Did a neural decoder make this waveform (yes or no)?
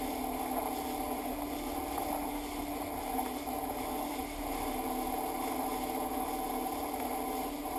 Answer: no